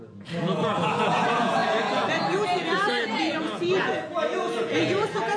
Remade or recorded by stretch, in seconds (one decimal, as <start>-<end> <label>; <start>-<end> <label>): 0.0-5.4 remade